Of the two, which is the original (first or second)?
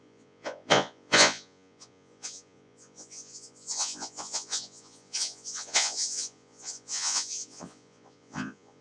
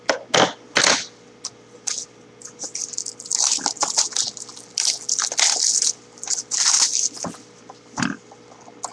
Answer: second